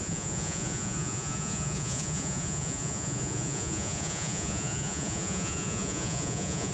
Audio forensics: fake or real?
fake